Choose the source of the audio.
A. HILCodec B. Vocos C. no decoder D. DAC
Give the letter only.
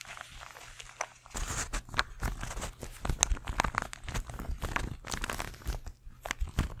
C